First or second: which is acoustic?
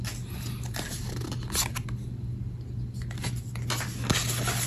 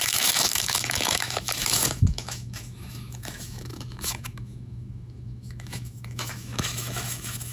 first